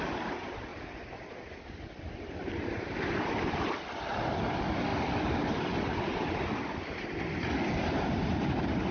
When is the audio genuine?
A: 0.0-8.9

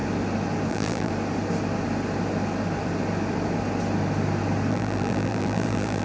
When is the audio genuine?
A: 0.0-0.7; 1.1-4.7

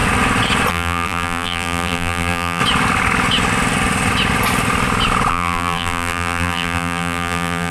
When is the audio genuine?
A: 0.0-0.7; 2.6-5.3